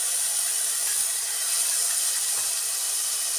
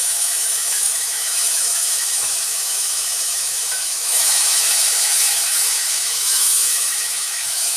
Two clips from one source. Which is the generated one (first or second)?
second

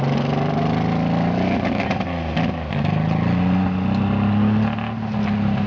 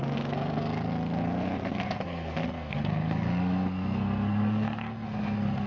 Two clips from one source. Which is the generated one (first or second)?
second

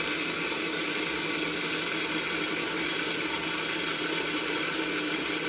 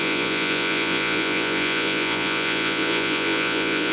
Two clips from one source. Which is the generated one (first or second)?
second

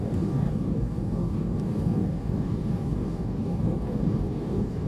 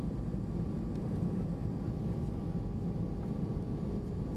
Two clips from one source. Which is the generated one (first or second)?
first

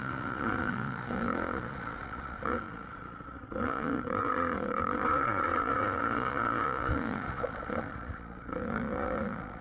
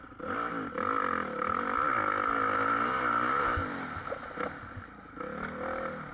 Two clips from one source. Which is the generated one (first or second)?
first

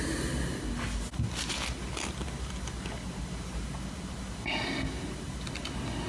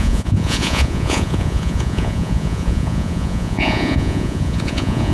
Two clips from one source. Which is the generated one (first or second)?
second